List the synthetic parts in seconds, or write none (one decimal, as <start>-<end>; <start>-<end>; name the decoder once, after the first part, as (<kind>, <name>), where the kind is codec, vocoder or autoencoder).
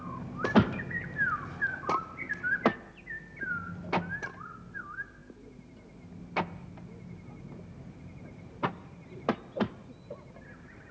none